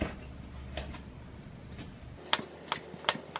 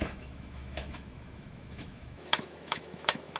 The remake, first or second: second